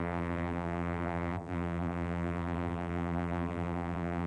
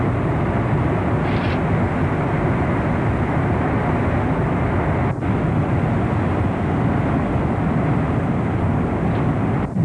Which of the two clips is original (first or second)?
second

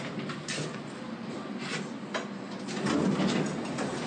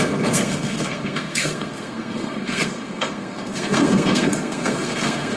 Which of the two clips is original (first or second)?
first